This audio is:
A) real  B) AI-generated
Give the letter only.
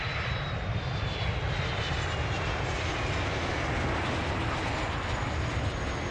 A